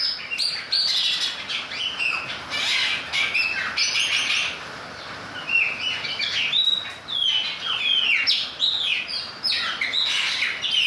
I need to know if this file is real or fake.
real